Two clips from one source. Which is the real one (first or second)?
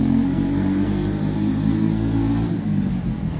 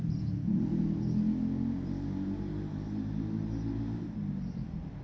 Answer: second